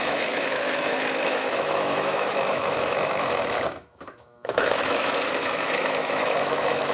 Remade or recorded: remade